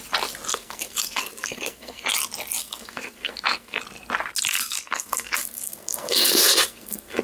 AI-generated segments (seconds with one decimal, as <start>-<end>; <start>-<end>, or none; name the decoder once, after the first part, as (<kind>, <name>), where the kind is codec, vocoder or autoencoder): 0.5-2.1 (codec, SNAC); 2.6-3.8; 4.5-7.2